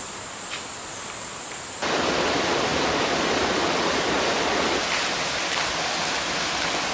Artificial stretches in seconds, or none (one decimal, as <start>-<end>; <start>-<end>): none